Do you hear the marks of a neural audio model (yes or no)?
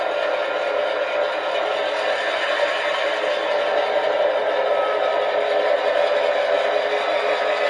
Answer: no